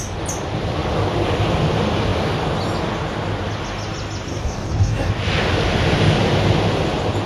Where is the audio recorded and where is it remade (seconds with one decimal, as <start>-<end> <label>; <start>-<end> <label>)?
0.0-4.3 recorded; 4.3-5.1 remade; 5.1-7.3 recorded